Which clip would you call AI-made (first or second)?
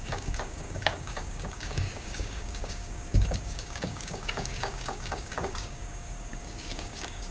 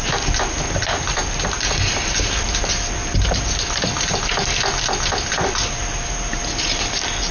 first